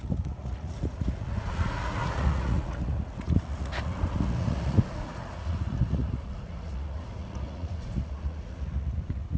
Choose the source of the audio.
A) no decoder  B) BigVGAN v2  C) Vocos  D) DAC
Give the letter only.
C